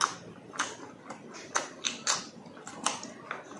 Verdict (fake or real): real